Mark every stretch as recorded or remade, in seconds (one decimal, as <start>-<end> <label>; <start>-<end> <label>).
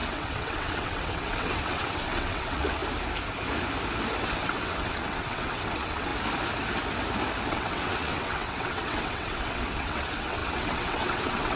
0.0-2.8 remade; 2.8-4.2 recorded; 4.2-6.1 remade; 6.1-7.5 recorded; 7.5-11.6 remade